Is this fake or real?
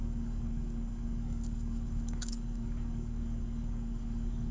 fake